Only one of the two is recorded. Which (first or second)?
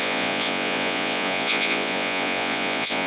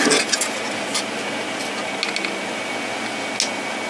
second